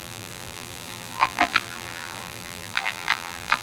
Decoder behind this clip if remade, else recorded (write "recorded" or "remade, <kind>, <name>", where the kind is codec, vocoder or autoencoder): remade, vocoder, BigVGAN v2